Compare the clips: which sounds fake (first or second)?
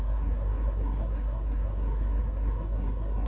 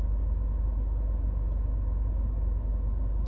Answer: first